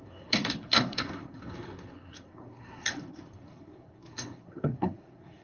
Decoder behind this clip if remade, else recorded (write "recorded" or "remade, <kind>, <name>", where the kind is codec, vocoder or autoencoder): remade, codec, SNAC